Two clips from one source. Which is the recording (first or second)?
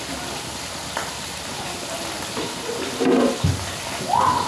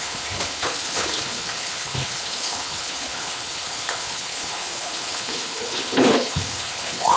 first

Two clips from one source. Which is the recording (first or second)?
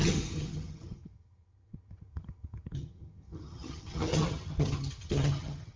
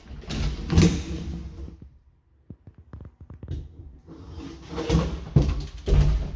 second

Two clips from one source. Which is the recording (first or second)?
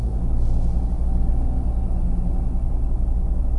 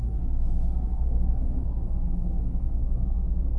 first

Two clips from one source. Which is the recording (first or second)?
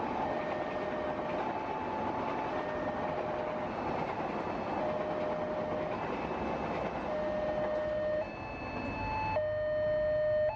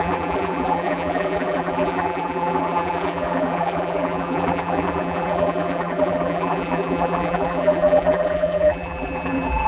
first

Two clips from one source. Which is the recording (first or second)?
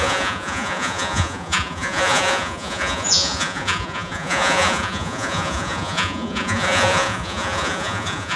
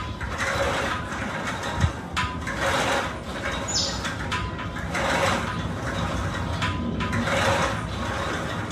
second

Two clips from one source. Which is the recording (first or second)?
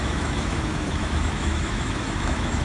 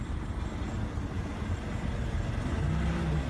second